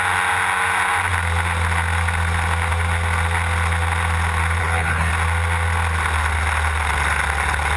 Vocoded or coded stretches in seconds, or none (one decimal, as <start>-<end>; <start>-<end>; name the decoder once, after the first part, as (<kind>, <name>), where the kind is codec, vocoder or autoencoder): 4.6-5.1 (codec, SNAC)